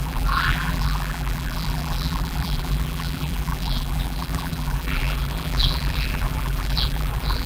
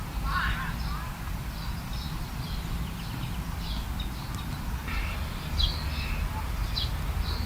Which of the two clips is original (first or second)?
second